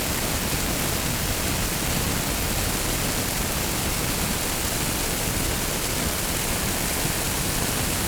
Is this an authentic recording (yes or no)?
yes